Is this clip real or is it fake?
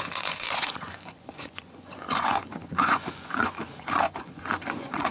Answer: fake